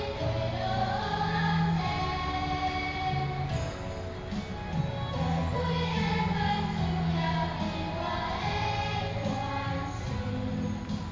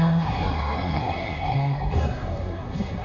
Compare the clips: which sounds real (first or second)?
first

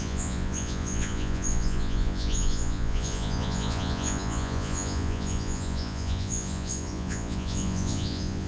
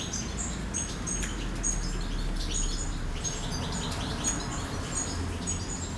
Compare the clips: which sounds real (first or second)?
second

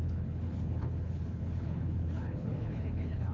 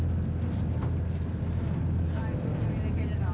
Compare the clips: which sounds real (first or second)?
second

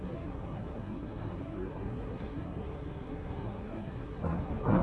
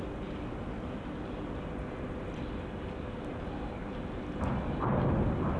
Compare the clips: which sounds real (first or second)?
second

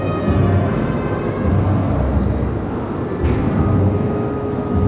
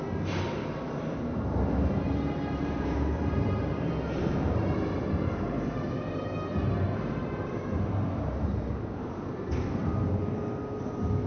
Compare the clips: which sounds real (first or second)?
first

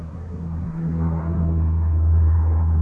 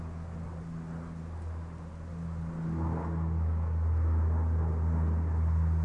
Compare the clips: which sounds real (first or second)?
second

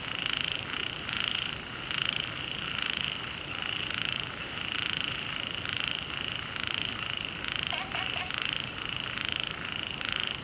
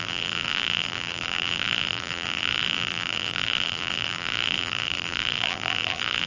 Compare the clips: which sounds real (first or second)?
first